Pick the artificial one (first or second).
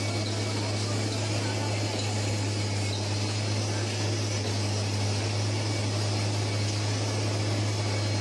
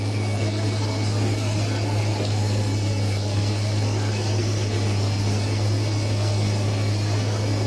second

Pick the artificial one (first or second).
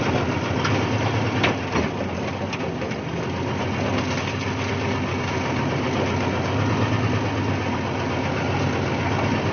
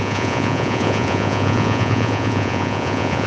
second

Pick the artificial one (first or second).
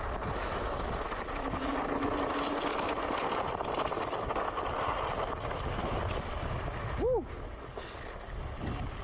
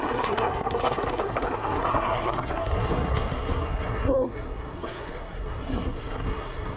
second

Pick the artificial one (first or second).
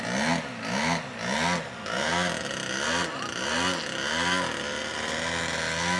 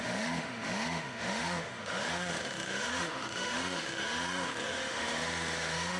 second